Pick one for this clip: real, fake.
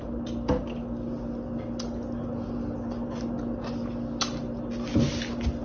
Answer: real